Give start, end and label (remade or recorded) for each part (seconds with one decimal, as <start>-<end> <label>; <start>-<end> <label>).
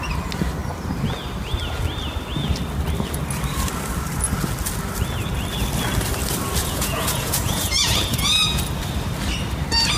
0.0-6.6 recorded; 6.6-8.6 remade; 8.6-10.0 recorded